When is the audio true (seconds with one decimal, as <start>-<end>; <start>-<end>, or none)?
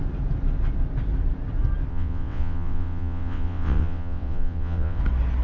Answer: 0.0-1.9; 5.0-5.4